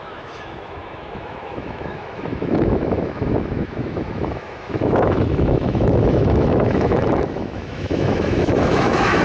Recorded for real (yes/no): no